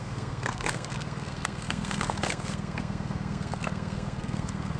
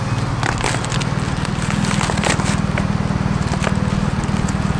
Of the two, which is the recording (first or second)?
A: second